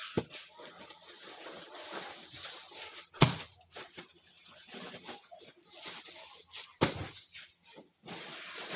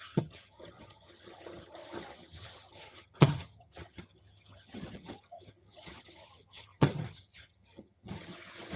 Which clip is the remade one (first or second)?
second